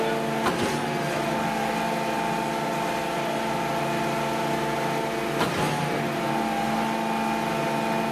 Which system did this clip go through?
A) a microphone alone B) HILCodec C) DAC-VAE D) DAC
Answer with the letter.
A